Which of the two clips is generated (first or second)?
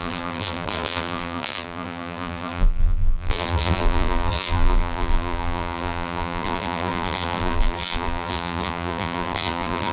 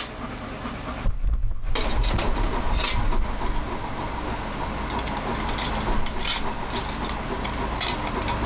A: first